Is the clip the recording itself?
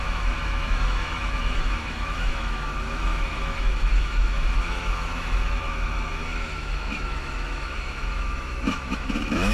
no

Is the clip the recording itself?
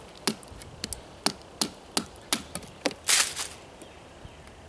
yes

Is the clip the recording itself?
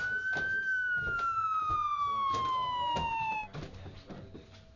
yes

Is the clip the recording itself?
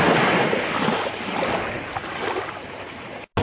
yes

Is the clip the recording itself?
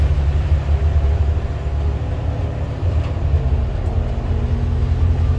yes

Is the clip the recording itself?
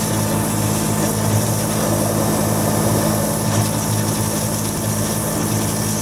yes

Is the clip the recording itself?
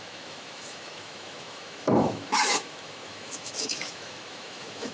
no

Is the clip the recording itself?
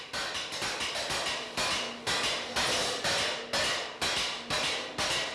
yes